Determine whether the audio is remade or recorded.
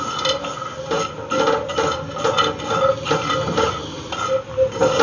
recorded